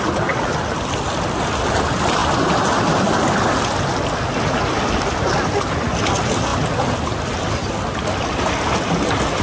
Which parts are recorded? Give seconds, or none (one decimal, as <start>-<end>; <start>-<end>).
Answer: 0.0-9.4